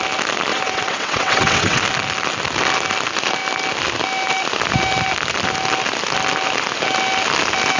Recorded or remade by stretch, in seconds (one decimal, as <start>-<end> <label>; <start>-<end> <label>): 0.0-0.5 recorded; 0.5-1.8 remade; 1.8-7.8 recorded